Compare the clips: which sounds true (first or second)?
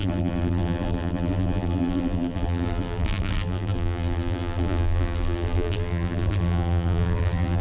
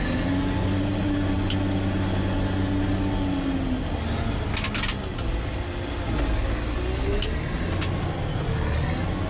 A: second